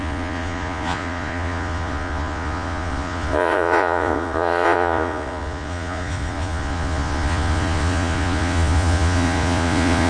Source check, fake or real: fake